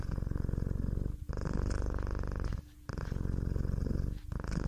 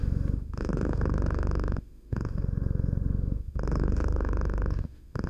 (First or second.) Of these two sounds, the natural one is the first